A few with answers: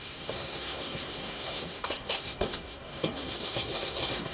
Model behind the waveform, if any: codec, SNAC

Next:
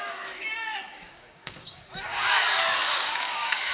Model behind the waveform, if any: codec, DAC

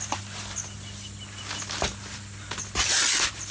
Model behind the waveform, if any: none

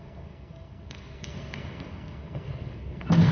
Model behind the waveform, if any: codec, SNAC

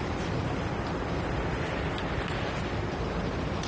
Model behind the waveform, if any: none